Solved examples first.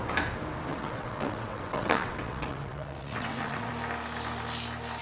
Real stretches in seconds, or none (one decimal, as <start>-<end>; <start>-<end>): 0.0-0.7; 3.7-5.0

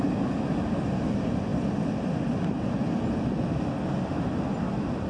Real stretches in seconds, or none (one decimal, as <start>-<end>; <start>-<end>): 0.0-5.1

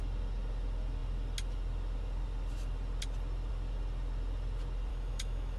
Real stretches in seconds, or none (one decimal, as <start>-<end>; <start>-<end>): 0.0-4.9

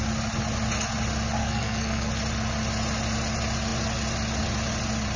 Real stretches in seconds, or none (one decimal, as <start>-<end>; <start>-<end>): 0.0-1.4; 2.1-5.2

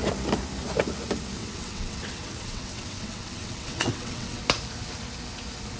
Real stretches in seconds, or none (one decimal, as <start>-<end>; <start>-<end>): 0.0-1.4; 4.4-5.8

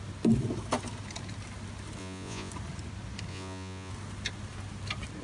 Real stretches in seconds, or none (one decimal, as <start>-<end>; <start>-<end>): 0.0-2.0; 2.5-3.3; 3.9-5.2

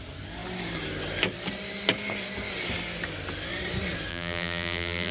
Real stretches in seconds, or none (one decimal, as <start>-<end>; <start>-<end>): 0.0-4.1

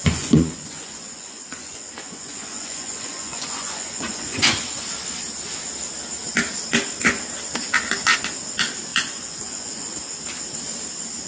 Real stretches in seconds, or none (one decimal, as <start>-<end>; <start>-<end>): 4.6-8.9; 9.9-11.3